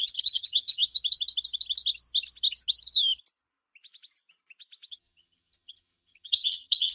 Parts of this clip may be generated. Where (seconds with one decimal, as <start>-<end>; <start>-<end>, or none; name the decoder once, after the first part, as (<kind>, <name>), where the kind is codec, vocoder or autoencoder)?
0.0-0.8 (vocoder, HiFi-GAN); 4.9-6.9